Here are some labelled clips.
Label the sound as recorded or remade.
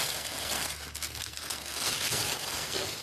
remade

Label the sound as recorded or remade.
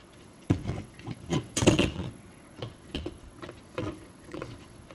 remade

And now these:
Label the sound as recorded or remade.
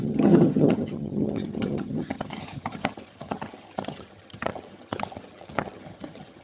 remade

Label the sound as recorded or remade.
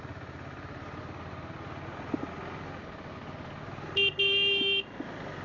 recorded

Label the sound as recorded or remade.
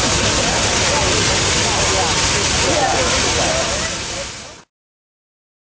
recorded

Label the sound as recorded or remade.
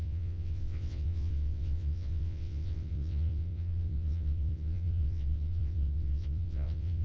remade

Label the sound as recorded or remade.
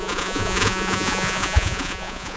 remade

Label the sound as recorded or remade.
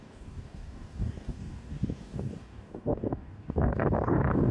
remade